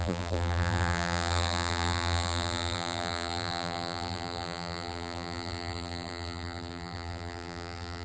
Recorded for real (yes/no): no